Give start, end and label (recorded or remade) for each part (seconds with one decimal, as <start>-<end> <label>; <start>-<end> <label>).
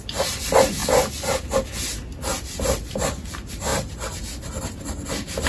0.0-5.5 recorded